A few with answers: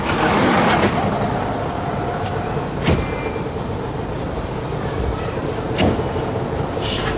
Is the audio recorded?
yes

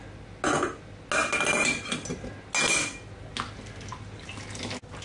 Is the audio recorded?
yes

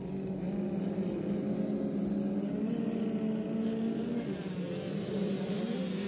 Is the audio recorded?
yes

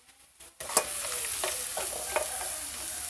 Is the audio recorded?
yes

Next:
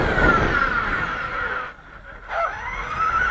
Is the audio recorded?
yes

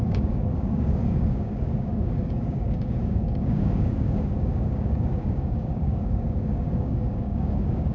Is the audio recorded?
no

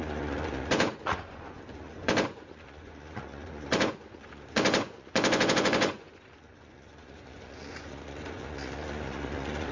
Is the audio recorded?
no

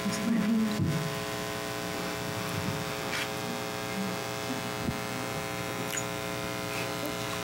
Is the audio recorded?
yes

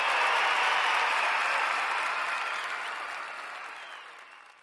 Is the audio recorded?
yes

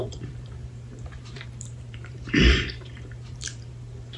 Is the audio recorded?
no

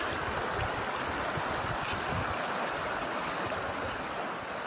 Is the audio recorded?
yes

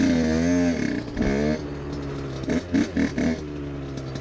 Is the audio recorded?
yes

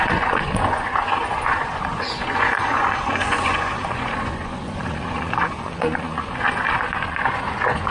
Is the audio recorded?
no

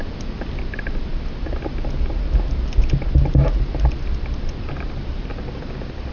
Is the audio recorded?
yes